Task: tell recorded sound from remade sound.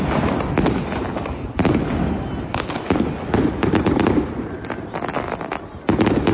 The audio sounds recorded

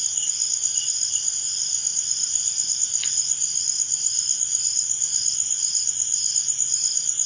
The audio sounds recorded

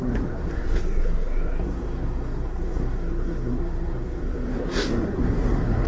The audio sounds remade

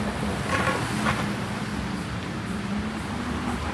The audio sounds recorded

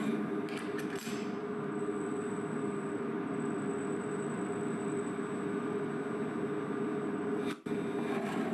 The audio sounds recorded